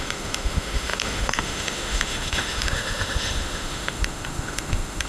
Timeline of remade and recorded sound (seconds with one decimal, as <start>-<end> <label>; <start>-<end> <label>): 0.0-5.1 remade